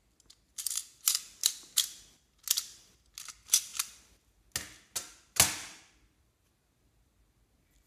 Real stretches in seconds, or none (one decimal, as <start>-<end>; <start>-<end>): 0.0-7.9